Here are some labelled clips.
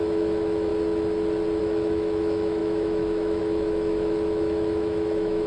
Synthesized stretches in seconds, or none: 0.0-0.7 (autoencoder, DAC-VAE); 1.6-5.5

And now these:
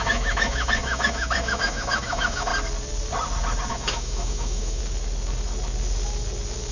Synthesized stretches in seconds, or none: 0.0-2.5 (autoencoder, DAC-VAE); 3.7-4.8

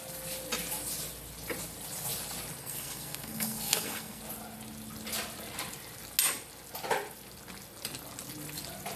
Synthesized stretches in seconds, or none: 2.6-4.2 (codec, SNAC)

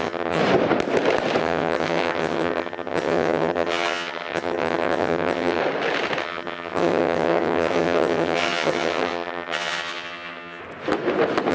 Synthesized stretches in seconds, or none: 0.0-0.4 (vocoder, HiFi-GAN); 1.4-5.6; 6.2-10.6

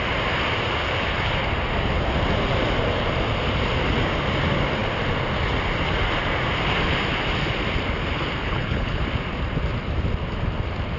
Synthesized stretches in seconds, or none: 8.4-9.0 (codec, HILCodec)